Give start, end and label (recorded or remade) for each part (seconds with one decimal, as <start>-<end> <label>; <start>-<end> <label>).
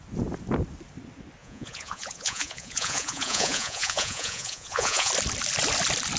0.0-1.4 recorded; 1.4-5.1 remade; 5.1-6.2 recorded